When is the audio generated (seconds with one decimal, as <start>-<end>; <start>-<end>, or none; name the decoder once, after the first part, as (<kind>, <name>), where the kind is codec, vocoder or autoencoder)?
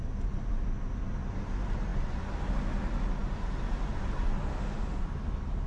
4.5-5.0 (autoencoder, DAC-VAE)